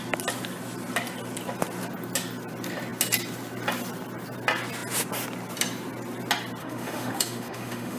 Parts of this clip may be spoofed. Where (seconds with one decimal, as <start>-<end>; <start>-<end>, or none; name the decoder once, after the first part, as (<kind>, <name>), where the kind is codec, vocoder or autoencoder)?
6.6-8.0 (autoencoder, DAC-VAE)